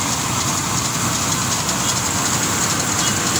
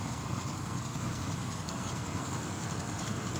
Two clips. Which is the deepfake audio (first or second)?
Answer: second